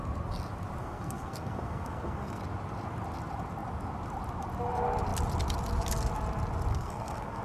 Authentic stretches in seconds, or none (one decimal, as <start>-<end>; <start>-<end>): 0.0-0.8; 2.4-6.7